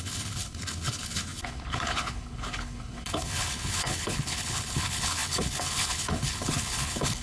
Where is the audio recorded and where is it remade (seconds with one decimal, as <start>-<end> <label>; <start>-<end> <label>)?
0.0-7.2 remade